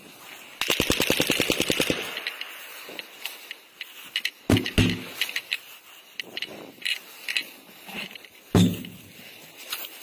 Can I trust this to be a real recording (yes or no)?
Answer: yes